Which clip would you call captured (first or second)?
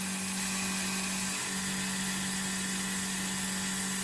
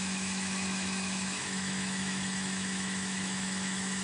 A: first